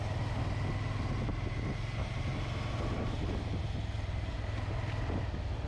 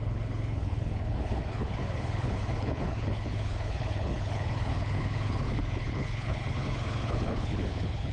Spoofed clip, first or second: second